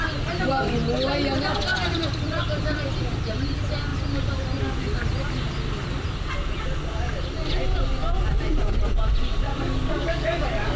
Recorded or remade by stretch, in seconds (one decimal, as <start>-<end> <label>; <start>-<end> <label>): 0.0-9.5 recorded; 9.5-10.8 remade